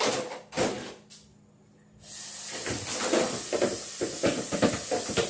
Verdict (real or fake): real